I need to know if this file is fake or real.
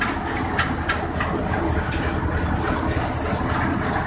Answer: real